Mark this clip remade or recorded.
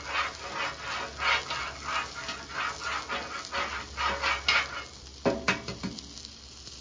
recorded